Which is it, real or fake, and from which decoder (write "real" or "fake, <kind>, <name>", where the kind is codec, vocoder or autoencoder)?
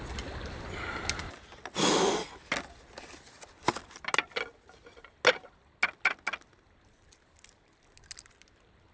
real